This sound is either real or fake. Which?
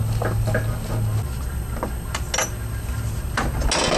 real